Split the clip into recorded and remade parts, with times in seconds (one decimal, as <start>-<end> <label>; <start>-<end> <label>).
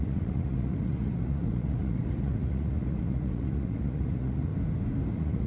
0.0-4.5 remade; 4.5-5.1 recorded; 5.1-5.5 remade